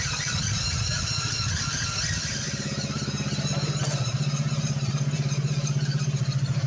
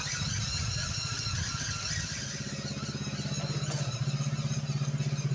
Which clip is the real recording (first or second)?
second